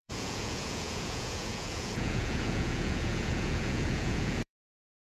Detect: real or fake fake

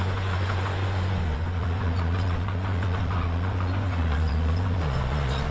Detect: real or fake fake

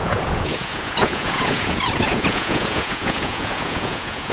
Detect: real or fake fake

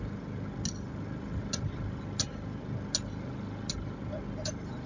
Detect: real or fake real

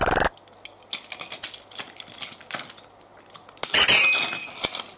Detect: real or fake real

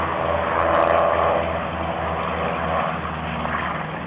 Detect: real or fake real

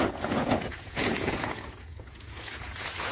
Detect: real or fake fake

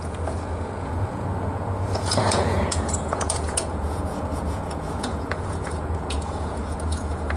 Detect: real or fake fake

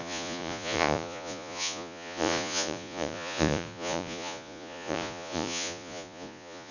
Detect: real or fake fake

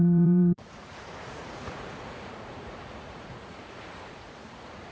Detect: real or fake fake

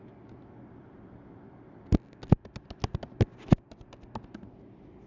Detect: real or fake real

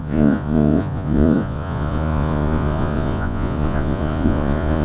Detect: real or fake fake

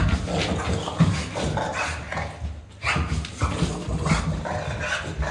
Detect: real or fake real